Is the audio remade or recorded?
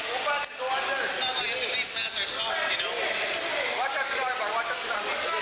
recorded